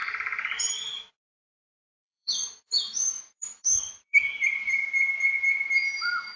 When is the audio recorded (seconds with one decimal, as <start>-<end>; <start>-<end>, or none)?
none